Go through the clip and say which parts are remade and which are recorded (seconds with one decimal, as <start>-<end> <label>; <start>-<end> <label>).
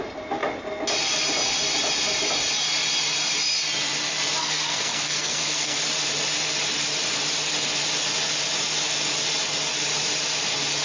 0.0-4.4 recorded; 4.4-5.8 remade; 5.8-10.8 recorded